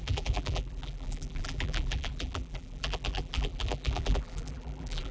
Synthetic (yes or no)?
yes